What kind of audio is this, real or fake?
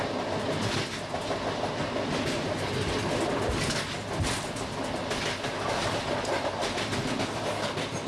real